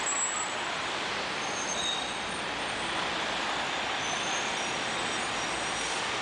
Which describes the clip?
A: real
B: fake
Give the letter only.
A